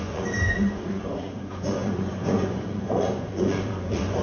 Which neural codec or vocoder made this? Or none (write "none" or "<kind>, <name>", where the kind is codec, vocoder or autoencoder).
vocoder, Vocos